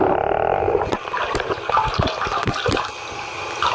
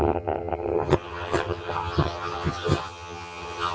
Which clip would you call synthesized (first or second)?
second